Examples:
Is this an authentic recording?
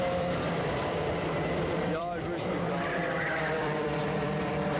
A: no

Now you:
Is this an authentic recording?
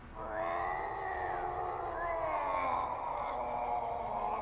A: yes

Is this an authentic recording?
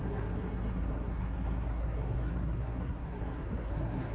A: no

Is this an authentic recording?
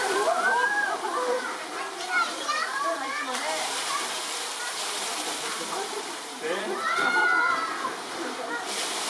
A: no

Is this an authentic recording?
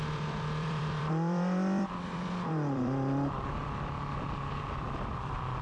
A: no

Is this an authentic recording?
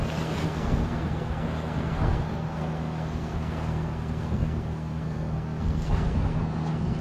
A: no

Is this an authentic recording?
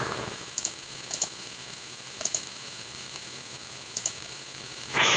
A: no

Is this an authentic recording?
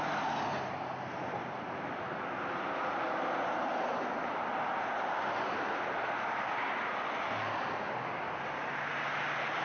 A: yes